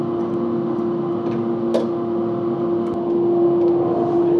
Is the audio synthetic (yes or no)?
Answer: no